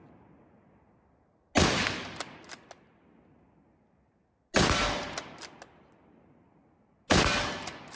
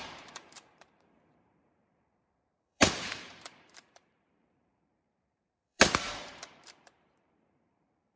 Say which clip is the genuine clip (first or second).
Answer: first